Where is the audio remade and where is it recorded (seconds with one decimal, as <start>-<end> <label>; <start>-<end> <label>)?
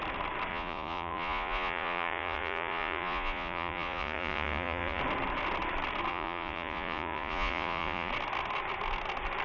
0.0-0.5 recorded; 0.5-5.0 remade; 5.0-6.1 recorded; 6.1-8.1 remade; 8.1-9.4 recorded